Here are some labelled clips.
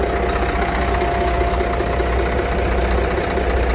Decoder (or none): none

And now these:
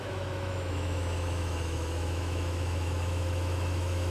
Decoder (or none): autoencoder, DAC-VAE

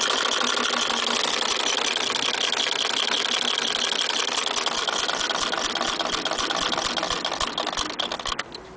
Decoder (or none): none